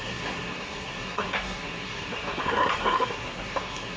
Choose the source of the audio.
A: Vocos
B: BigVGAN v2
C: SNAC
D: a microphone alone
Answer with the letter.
C